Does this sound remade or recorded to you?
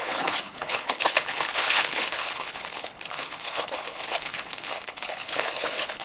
remade